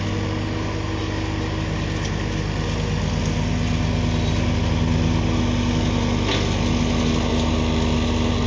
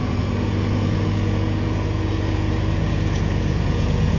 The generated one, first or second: second